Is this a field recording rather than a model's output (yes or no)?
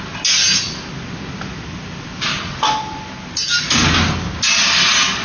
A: yes